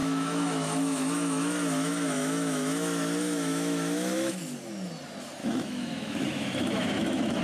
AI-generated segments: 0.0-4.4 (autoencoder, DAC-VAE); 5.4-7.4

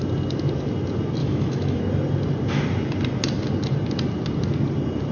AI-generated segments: 1.2-1.8 (autoencoder, DAC-VAE)

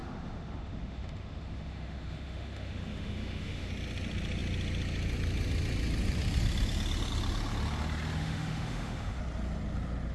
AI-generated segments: 0.0-3.7 (autoencoder, DAC-VAE); 8.2-9.2

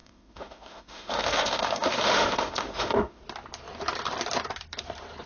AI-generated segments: 0.0-3.2 (autoencoder, DAC-VAE)

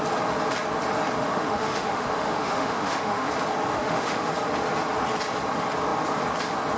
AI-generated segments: 1.2-3.3 (autoencoder, DAC-VAE); 3.7-4.3

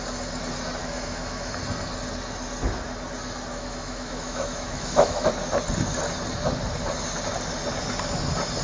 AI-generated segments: 0.8-1.6 (autoencoder, DAC-VAE); 3.5-5.3

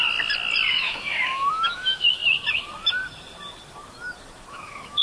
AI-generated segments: 0.7-2.2 (autoencoder, DAC-VAE); 4.5-5.0